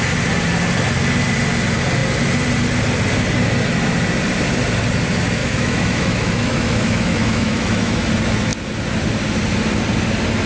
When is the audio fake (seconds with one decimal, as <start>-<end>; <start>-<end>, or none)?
5.4-8.1

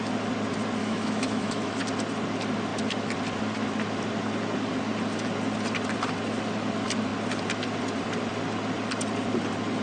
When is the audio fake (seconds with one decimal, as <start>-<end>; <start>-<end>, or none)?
0.8-1.8